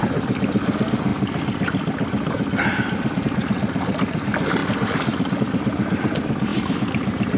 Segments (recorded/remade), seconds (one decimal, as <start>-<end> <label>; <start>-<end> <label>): 0.0-7.4 recorded